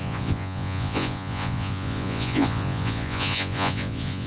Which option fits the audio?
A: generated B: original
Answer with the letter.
A